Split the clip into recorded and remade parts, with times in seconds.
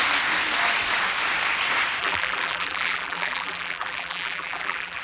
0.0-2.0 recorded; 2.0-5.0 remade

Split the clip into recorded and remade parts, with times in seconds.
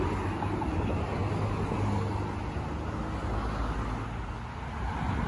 0.0-5.3 recorded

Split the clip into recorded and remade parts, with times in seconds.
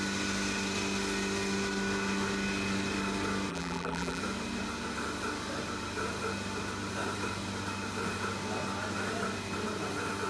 0.0-3.5 recorded; 3.5-4.2 remade; 4.2-10.3 recorded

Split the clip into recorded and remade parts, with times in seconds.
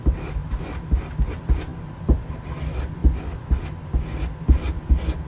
0.0-5.3 recorded